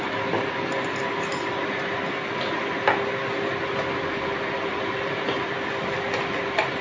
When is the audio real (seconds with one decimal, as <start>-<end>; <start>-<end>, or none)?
0.0-4.7; 5.5-6.8